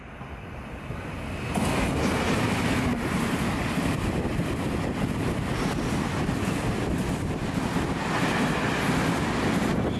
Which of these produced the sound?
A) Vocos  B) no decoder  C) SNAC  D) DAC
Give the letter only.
B